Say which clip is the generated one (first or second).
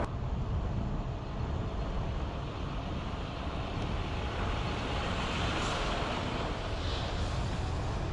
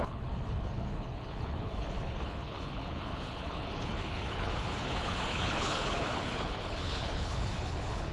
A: second